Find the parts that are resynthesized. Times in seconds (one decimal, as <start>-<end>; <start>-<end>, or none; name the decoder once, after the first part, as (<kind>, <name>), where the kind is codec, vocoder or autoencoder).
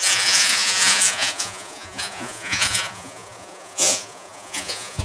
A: 0.0-5.0 (vocoder, Vocos)